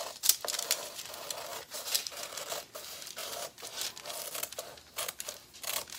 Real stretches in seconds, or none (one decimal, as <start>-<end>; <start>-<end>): 0.0-1.5; 2.2-3.2; 3.7-6.0